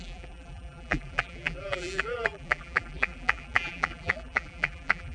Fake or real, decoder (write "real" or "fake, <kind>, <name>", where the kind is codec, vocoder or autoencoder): fake, vocoder, BigVGAN v2